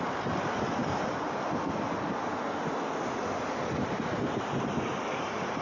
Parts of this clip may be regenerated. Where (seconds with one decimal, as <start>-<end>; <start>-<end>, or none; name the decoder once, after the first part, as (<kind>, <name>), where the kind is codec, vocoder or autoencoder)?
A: none